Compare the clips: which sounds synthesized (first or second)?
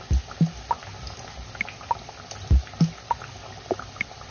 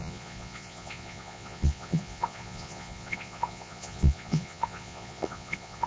second